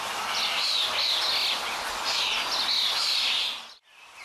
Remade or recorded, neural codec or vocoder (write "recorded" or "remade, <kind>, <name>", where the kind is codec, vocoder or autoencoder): recorded